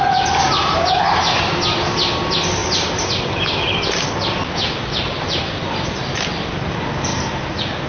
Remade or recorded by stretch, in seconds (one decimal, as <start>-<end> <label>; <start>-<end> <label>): 0.0-7.9 recorded

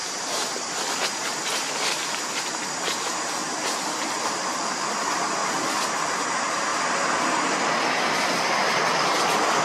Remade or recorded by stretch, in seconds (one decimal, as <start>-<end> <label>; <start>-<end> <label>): 0.0-3.4 recorded; 3.4-4.9 remade; 4.9-5.4 recorded; 5.4-6.0 remade; 6.0-6.7 recorded; 6.7-7.7 remade; 7.7-9.6 recorded

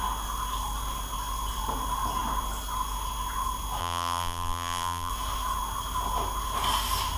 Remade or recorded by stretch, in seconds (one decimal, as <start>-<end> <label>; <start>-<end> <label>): 0.0-3.8 recorded; 3.8-5.1 remade; 5.1-7.2 recorded

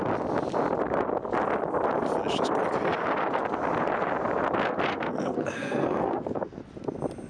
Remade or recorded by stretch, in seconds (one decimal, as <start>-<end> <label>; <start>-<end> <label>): 0.0-4.9 recorded; 4.9-6.6 remade; 6.6-7.3 recorded

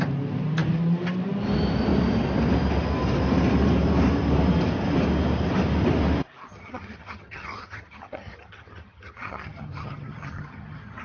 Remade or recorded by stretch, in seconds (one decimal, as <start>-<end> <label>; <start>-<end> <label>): 0.0-6.5 recorded; 6.5-11.0 remade

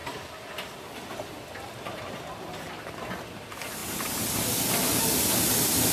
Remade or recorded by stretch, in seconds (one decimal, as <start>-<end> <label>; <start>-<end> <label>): 0.0-5.9 recorded

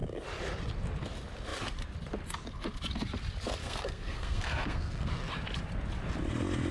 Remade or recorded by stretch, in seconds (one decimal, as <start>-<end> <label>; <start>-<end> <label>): 0.0-3.6 recorded; 3.6-5.1 remade; 5.1-6.7 recorded

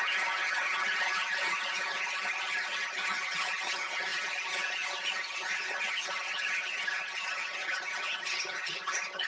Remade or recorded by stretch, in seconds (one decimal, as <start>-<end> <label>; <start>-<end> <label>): 0.0-9.3 remade